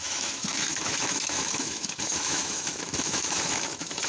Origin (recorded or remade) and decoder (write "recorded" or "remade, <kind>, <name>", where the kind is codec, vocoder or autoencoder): remade, autoencoder, DAC-VAE